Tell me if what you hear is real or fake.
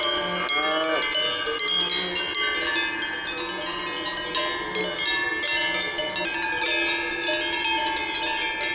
real